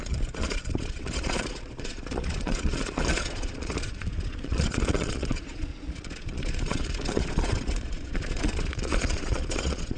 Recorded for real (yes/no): no